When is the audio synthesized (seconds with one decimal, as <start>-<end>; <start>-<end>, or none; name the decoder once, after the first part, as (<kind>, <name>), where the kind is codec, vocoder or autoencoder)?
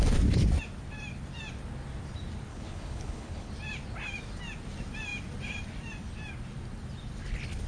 2.5-3.5 (codec, HILCodec)